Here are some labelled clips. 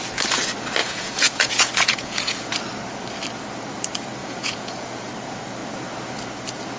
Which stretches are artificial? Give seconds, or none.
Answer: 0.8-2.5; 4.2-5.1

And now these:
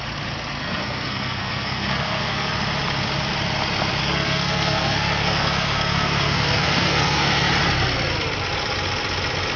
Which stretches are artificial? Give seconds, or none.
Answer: 0.6-2.5; 4.0-7.5